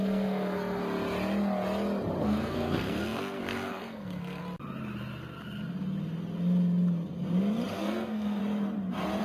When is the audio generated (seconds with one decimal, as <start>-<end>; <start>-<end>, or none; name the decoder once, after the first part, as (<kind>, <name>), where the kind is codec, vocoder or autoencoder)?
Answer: 0.0-0.8 (codec, SNAC); 2.2-4.4; 7.7-8.4